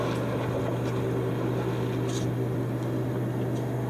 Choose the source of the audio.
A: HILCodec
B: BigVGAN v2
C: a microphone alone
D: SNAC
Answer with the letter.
C